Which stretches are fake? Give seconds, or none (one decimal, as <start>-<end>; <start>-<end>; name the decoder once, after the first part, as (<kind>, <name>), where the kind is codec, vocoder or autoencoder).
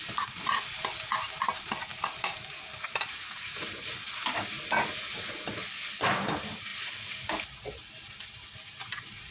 1.9-2.5 (vocoder, BigVGAN v2)